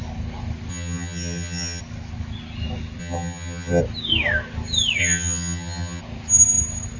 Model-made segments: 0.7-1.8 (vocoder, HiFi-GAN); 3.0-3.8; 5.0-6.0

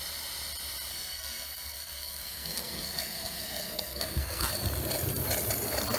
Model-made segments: 0.9-4.5 (codec, SNAC)